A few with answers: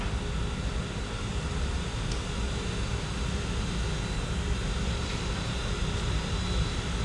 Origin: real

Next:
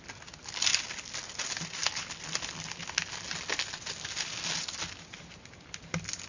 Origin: real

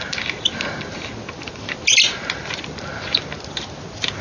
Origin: real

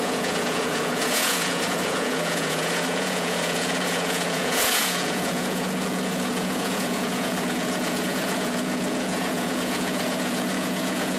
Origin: fake